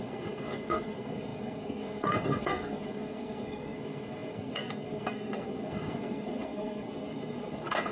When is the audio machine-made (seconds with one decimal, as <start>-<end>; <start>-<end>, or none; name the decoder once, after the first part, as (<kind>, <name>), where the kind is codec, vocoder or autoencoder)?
0.0-7.9 (codec, SNAC)